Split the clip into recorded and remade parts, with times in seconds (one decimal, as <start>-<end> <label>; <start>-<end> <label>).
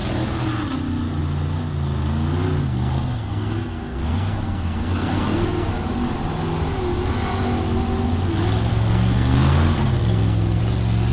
0.0-2.6 recorded; 2.6-5.7 remade; 5.7-8.7 recorded; 8.7-10.6 remade; 10.6-11.1 recorded